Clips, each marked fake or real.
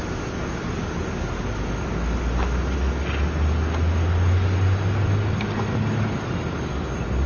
real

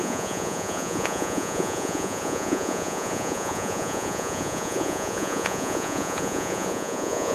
fake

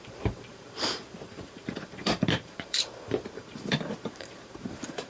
fake